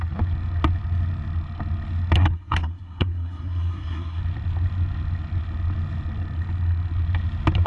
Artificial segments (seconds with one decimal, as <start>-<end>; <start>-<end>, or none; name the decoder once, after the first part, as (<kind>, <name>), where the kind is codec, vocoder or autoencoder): 2.2-4.2 (codec, SNAC)